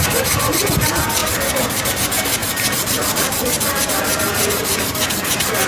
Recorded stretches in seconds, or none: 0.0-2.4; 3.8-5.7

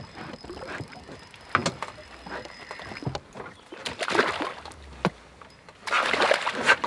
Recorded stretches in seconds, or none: 0.0-6.9